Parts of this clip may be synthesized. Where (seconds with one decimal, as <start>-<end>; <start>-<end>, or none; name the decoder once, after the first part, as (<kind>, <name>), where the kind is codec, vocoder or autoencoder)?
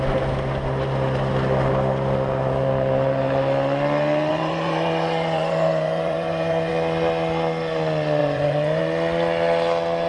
4.3-6.7 (vocoder, Vocos); 8.2-8.8